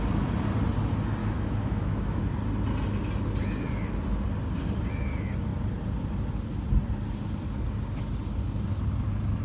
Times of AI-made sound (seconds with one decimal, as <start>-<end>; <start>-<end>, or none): 1.2-2.2